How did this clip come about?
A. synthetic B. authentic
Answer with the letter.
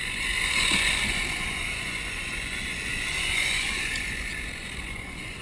A